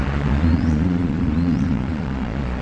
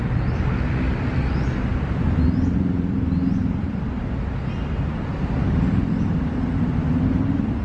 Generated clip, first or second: first